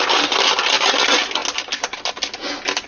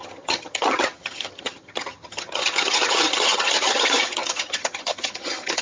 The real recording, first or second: first